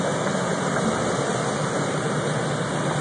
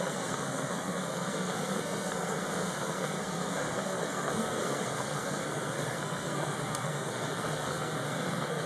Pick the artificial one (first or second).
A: second